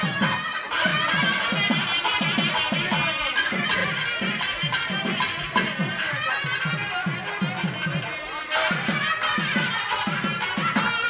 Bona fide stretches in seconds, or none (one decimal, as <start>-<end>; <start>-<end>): 0.0-11.1